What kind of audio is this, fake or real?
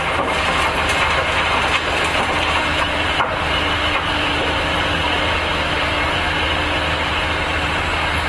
fake